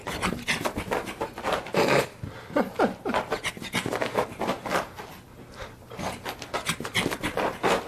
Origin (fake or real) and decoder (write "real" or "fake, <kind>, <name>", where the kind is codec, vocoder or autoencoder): real